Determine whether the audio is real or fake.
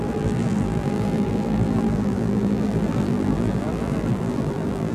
fake